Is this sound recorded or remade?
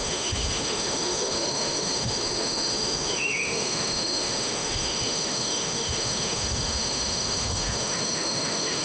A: remade